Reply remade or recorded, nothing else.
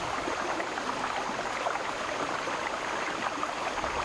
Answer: recorded